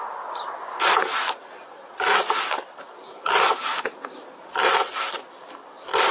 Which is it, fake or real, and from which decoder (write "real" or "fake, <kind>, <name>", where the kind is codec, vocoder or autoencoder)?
real